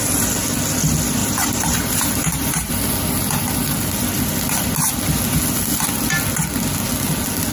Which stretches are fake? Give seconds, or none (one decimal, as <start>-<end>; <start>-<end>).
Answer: 1.2-2.7